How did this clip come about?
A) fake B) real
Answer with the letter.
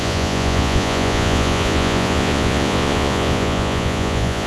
A